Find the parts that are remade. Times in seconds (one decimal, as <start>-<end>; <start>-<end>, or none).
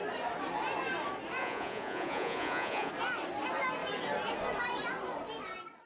1.4-2.9